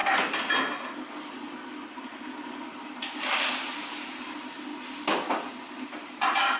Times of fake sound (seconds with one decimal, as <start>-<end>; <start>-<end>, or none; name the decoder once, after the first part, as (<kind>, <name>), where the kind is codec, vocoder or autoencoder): 4.0-4.7 (vocoder, BigVGAN v2); 5.8-6.6